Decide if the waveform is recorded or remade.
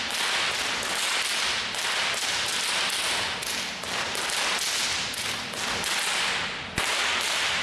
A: recorded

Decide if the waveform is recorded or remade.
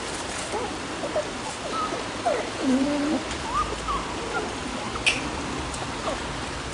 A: recorded